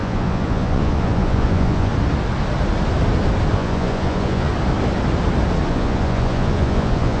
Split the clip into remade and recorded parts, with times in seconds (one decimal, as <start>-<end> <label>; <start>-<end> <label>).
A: 0.0-1.9 remade; 1.9-3.5 recorded; 3.5-4.5 remade; 4.5-5.7 recorded; 5.7-7.2 remade